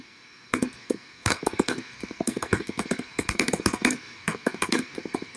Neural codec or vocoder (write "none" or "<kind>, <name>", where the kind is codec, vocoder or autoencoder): codec, SNAC